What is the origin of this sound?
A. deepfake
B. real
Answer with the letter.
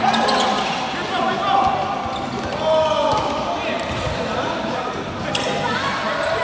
B